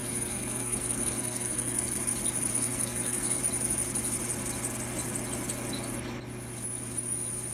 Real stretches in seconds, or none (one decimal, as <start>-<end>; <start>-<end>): 2.0-2.5; 3.4-7.5